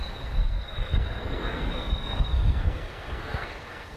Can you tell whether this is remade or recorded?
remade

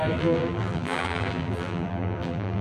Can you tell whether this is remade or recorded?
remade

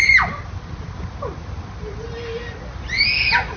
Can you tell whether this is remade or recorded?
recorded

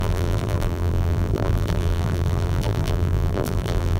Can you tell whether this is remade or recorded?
remade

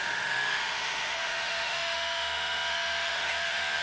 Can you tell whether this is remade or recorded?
remade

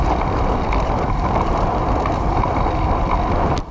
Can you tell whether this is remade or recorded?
remade